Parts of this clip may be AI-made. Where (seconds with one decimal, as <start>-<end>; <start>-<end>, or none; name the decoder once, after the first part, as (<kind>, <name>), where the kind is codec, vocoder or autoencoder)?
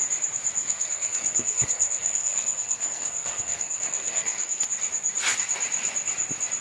0.6-4.6 (codec, SNAC)